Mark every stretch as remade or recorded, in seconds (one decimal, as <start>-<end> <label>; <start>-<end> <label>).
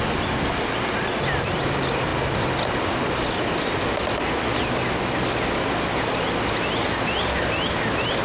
0.0-8.2 recorded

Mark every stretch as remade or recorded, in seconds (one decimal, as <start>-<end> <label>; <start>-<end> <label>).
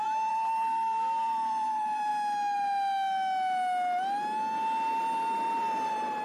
0.0-2.1 remade; 2.1-5.0 recorded; 5.0-6.2 remade